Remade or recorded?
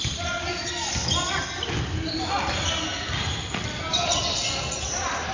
recorded